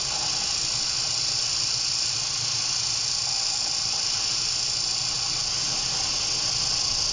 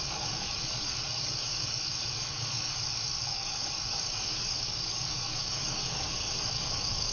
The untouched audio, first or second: first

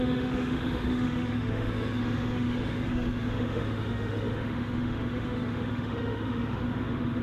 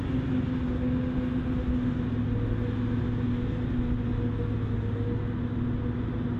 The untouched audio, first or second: second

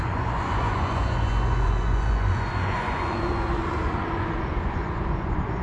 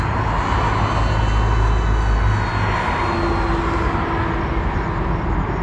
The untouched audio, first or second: second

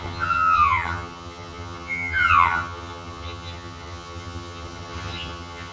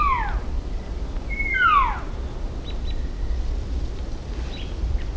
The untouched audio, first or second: second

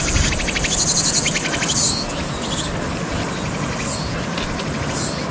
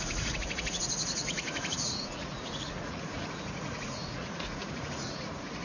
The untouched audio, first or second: first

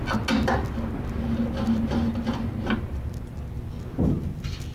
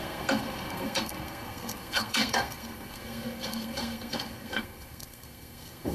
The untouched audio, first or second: first